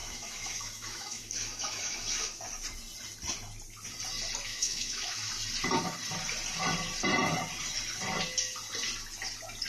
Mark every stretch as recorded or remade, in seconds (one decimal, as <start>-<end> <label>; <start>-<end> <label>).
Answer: 0.0-2.4 remade; 2.4-4.5 recorded; 4.5-5.3 remade; 5.3-9.7 recorded